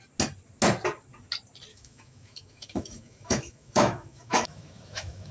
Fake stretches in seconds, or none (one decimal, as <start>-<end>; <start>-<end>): 1.7-5.3